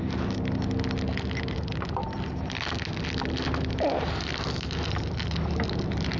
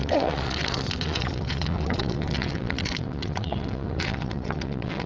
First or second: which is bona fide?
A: first